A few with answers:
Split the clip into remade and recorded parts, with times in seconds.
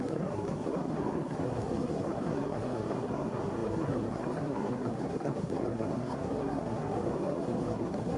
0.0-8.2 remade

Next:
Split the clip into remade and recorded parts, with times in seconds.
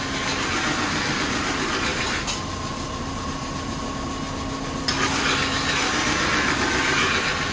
0.0-1.9 recorded; 1.9-2.4 remade; 2.4-7.5 recorded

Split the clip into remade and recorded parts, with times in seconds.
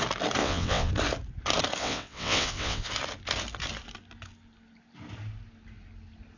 0.0-0.4 recorded; 0.4-0.9 remade; 0.9-1.8 recorded; 1.8-2.9 remade; 2.9-6.4 recorded